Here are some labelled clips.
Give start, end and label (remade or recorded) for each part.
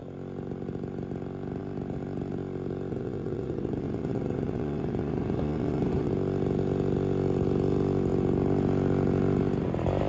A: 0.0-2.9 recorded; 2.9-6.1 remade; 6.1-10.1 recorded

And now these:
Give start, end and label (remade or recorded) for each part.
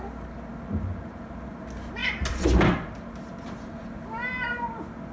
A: 0.0-5.1 recorded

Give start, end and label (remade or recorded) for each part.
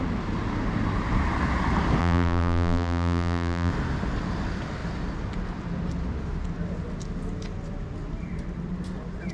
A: 0.0-2.0 recorded; 2.0-3.7 remade; 3.7-9.3 recorded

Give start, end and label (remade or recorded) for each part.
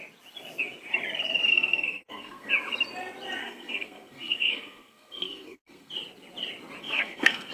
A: 0.0-1.5 recorded; 1.5-2.5 remade; 2.5-3.4 recorded; 3.4-5.9 remade; 5.9-6.8 recorded; 6.8-7.5 remade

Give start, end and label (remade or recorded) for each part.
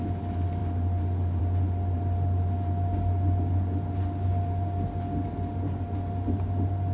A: 0.0-6.9 recorded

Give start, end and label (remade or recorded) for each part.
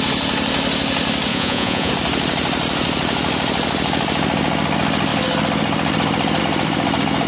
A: 0.0-1.3 recorded; 1.3-1.9 remade; 1.9-7.3 recorded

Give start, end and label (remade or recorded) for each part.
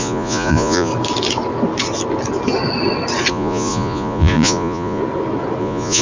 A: 0.0-0.9 remade; 0.9-3.3 recorded; 3.3-5.0 remade; 5.0-5.6 recorded; 5.6-6.0 remade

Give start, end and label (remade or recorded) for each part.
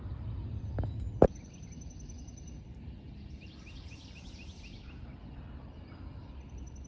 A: 0.0-6.9 recorded